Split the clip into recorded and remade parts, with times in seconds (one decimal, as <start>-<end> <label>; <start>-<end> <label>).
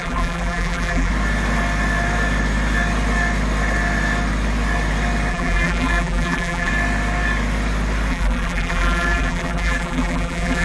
0.0-1.1 remade; 1.1-5.3 recorded; 5.3-6.7 remade; 6.7-8.1 recorded; 8.1-10.6 remade